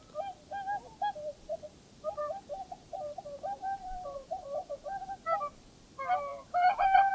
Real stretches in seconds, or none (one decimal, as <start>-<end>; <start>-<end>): 0.0-2.2; 5.2-6.3